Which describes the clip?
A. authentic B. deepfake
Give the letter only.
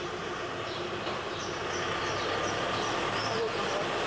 A